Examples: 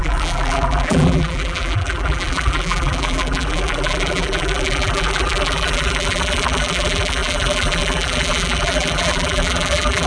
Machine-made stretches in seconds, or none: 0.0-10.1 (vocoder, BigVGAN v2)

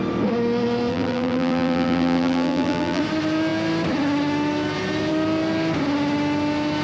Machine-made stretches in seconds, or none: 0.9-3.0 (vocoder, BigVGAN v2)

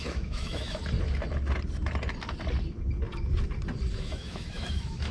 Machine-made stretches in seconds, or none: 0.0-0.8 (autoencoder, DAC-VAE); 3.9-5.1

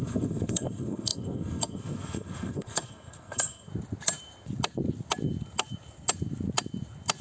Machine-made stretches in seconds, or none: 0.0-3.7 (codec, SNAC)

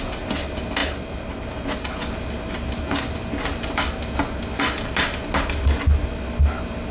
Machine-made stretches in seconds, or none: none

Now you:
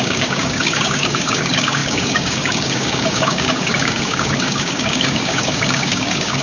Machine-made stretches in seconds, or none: 0.0-6.4 (codec, DAC)

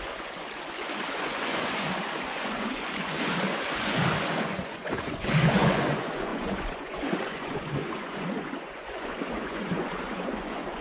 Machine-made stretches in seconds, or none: 0.0-10.8 (vocoder, Vocos)